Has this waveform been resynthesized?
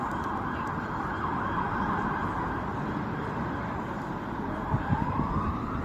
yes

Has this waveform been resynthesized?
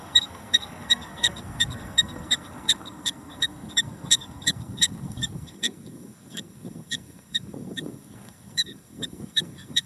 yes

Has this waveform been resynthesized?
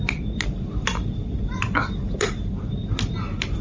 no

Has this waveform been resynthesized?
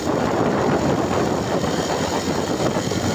no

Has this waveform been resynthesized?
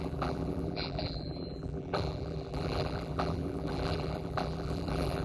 yes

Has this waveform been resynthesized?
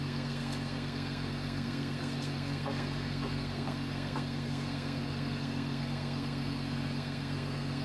yes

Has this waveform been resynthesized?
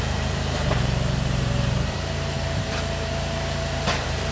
yes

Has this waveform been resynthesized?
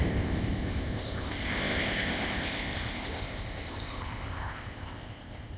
yes